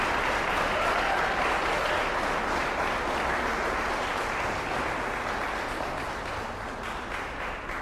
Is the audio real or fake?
real